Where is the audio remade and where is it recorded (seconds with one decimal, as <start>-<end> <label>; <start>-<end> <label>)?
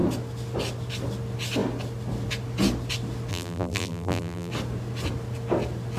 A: 0.0-3.3 recorded; 3.3-4.5 remade; 4.5-6.0 recorded